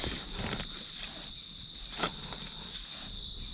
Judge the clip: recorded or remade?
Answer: recorded